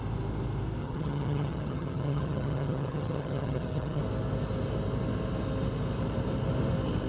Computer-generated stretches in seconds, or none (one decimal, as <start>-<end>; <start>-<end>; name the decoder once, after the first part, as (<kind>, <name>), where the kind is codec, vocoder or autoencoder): 0.8-4.0 (vocoder, HiFi-GAN)